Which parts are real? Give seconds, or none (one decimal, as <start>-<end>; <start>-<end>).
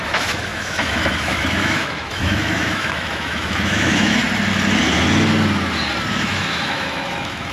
4.2-6.1